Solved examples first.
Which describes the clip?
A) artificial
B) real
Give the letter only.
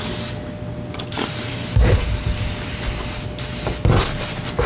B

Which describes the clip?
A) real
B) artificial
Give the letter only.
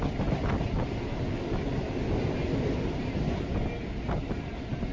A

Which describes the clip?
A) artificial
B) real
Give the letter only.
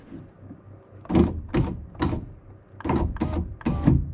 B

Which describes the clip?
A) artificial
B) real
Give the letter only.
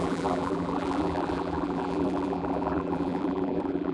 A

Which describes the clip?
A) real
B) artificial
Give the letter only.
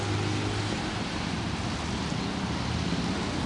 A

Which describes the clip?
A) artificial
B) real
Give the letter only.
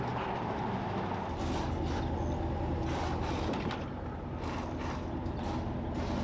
B